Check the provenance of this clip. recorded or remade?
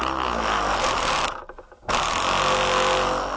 recorded